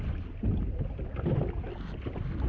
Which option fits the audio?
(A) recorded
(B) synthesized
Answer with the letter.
A